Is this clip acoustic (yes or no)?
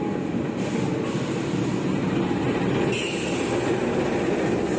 yes